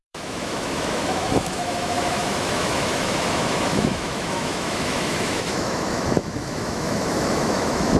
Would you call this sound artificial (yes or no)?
yes